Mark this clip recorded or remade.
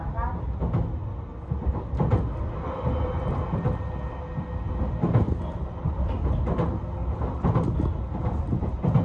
recorded